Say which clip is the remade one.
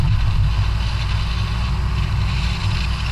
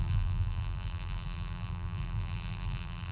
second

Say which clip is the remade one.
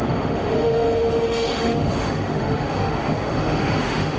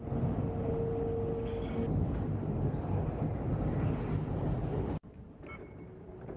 first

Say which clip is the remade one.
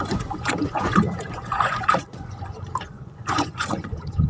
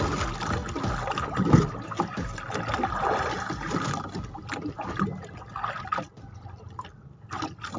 first